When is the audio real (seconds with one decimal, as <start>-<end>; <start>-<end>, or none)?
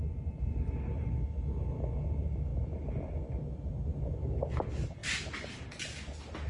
0.0-5.0; 5.7-6.5